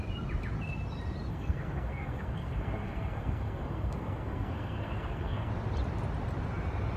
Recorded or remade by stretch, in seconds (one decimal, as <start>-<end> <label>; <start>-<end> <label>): 0.0-1.3 recorded; 1.3-5.5 remade; 5.5-7.0 recorded